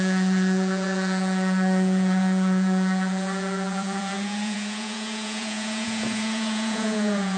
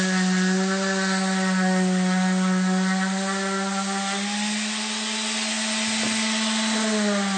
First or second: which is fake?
first